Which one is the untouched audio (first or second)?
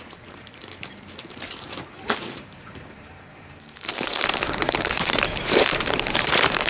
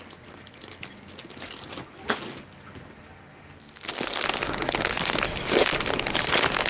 second